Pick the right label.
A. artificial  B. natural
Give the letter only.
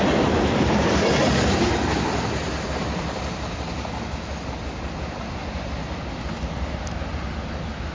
B